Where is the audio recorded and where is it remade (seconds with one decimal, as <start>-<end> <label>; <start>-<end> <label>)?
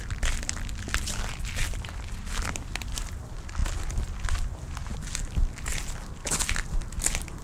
0.0-7.4 recorded